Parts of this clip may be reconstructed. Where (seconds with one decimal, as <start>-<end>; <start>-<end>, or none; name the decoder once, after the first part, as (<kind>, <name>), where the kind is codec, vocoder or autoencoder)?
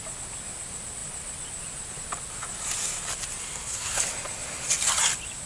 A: 3.4-4.0 (codec, SNAC)